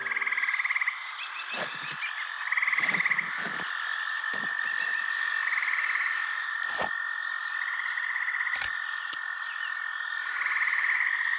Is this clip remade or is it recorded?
recorded